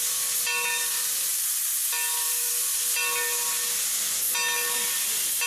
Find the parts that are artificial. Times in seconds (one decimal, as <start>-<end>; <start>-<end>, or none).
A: none